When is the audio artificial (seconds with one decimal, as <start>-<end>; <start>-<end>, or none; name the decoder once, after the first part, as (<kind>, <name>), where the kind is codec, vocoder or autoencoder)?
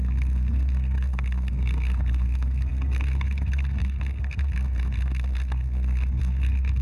0.0-6.8 (codec, SNAC)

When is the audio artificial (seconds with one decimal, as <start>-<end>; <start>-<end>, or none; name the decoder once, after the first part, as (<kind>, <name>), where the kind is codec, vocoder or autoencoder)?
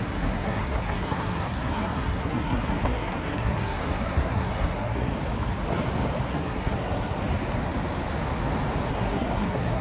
0.0-5.1 (codec, SNAC); 6.3-7.2; 8.9-9.8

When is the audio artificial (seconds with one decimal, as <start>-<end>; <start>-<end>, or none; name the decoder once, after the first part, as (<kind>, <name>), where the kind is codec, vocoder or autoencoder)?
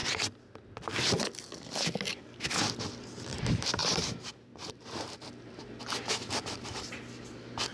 none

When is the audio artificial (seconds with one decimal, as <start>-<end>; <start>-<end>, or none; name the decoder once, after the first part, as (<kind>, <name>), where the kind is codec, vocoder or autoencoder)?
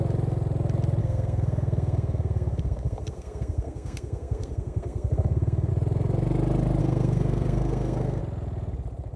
1.0-5.7 (codec, SNAC); 6.8-8.2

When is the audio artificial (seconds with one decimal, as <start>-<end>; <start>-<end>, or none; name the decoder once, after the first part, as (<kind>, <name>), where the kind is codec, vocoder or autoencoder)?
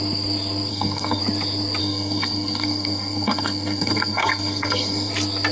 0.7-1.2 (codec, SNAC); 1.8-5.1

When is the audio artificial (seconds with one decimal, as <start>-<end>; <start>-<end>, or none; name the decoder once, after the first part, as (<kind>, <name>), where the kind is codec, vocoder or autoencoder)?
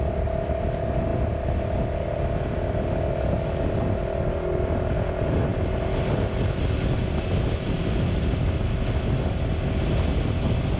none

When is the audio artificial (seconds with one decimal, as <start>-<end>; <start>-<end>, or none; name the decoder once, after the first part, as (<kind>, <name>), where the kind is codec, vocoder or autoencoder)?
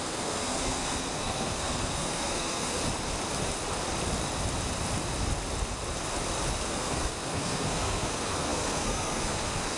0.0-2.8 (codec, SNAC); 6.7-9.8